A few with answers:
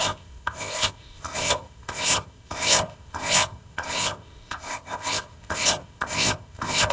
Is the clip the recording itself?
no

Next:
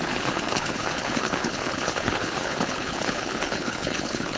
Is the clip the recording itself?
no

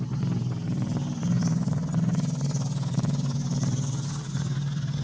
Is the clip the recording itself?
no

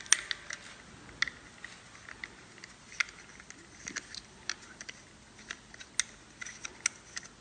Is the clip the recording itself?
yes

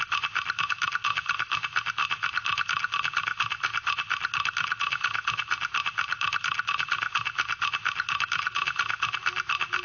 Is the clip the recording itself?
yes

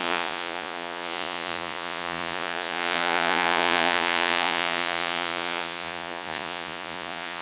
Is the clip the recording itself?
no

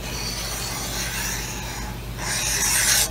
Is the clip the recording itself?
yes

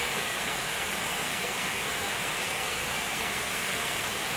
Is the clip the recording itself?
no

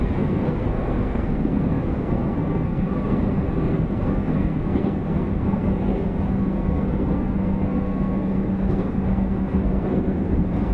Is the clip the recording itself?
no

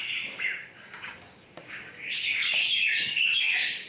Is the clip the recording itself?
no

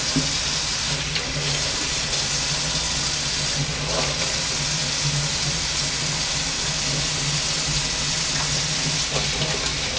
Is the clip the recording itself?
yes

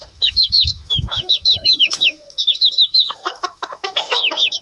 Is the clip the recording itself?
no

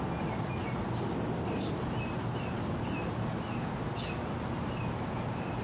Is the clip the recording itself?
yes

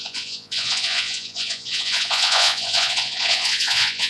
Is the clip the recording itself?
no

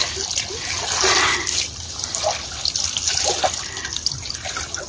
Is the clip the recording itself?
yes